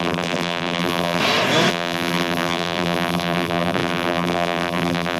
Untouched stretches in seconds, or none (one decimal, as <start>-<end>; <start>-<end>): 1.2-1.7